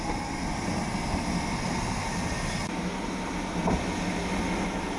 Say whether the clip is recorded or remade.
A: recorded